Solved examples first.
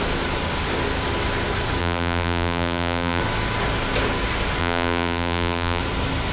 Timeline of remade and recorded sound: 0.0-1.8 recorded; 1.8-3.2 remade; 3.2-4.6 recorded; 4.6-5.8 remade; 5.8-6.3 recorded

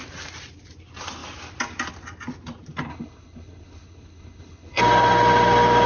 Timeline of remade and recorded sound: 0.0-2.9 recorded; 2.9-4.8 remade; 4.8-5.9 recorded

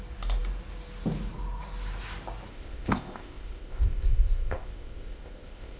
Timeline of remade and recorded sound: 0.0-2.5 recorded; 2.5-5.8 remade